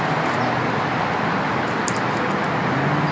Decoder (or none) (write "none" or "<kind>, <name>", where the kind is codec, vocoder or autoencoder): none